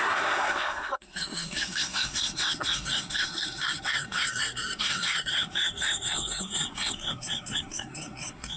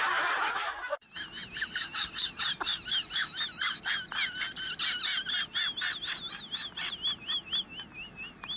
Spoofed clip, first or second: first